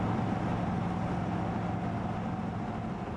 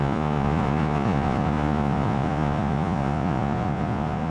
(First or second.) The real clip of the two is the first